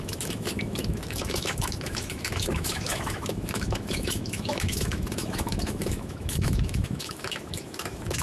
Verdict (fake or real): fake